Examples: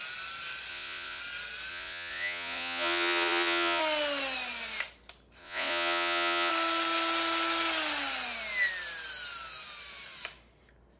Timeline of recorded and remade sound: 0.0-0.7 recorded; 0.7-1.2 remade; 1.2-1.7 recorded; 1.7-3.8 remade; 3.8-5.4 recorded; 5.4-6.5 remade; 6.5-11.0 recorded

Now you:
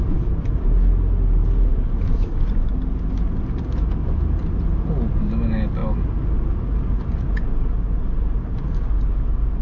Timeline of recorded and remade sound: 0.0-1.7 recorded; 1.7-2.5 remade; 2.5-9.6 recorded

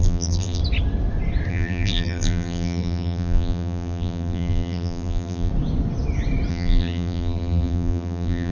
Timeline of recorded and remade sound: 0.0-0.6 remade; 0.6-1.5 recorded; 1.5-5.5 remade; 5.5-6.5 recorded; 6.5-8.5 remade

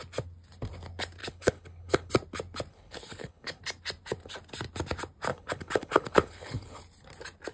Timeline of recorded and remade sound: 0.0-1.2 recorded; 1.2-2.1 remade; 2.1-2.7 recorded; 2.7-3.6 remade; 3.6-5.3 recorded; 5.3-6.8 remade; 6.8-7.5 recorded

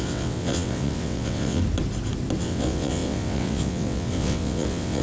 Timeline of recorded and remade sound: 0.0-1.6 remade; 1.6-2.4 recorded; 2.4-5.0 remade

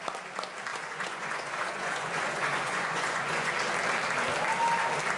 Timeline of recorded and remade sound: 0.0-0.7 recorded; 0.7-3.5 remade; 3.5-5.2 recorded